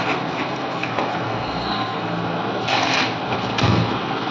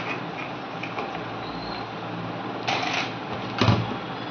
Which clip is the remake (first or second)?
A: first